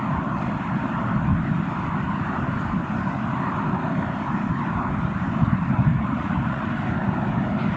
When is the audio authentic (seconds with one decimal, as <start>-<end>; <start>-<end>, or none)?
0.0-5.9; 6.7-7.8